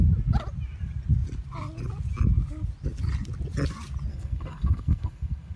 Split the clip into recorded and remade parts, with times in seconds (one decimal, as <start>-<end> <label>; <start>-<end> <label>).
0.0-4.1 recorded; 4.1-5.6 remade

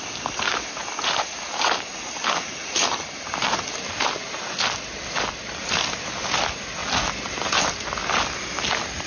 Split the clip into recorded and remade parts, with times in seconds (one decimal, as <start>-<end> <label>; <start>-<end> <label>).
0.0-9.1 recorded

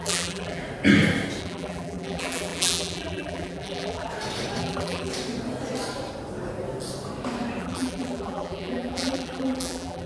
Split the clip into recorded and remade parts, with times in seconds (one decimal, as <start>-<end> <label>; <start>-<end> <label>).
0.0-0.6 remade; 0.6-1.4 recorded; 1.4-4.1 remade; 4.1-4.6 recorded; 4.6-5.1 remade; 5.1-7.6 recorded; 7.6-10.1 remade

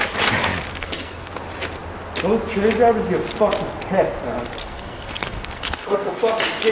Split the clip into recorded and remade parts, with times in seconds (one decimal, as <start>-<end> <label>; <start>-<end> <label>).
0.0-0.7 recorded; 0.7-1.3 remade; 1.3-4.6 recorded; 4.6-6.2 remade; 6.2-6.7 recorded